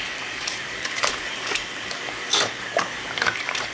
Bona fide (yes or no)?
no